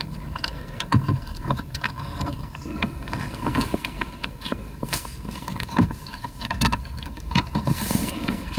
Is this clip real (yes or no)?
no